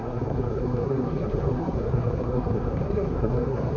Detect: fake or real fake